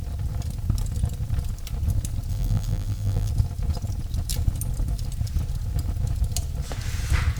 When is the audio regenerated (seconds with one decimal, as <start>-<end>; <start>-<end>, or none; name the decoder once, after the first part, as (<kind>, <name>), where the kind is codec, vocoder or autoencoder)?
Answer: 2.3-3.3 (vocoder, BigVGAN v2)